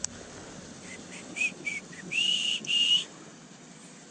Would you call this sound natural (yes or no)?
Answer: yes